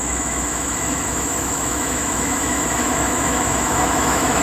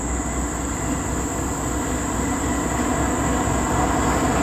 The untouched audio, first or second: second